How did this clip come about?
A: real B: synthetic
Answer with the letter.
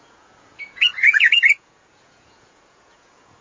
B